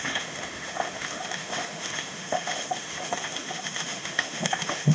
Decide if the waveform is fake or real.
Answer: fake